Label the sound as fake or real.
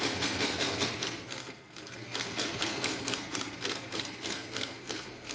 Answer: fake